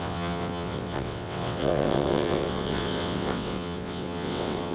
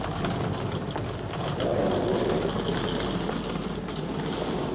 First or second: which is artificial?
first